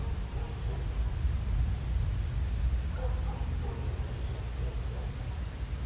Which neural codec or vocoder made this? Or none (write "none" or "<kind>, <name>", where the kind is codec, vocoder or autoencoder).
none